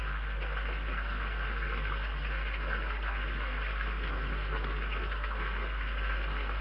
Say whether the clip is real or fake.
fake